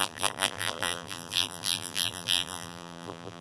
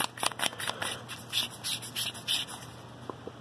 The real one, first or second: second